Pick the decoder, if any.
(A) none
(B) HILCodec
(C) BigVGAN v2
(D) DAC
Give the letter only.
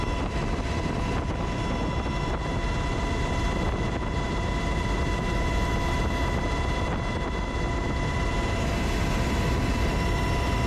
A